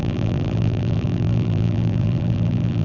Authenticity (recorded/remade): remade